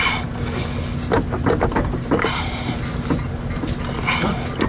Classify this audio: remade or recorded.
recorded